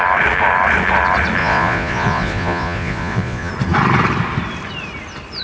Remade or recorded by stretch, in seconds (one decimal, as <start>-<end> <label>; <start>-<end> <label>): 0.0-1.4 recorded; 1.4-3.5 remade; 3.5-5.4 recorded